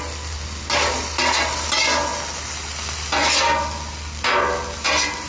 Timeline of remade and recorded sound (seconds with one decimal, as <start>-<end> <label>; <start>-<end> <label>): 0.0-5.3 recorded